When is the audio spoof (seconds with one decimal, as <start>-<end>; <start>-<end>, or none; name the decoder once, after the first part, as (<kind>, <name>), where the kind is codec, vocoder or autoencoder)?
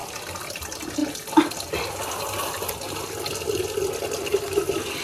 none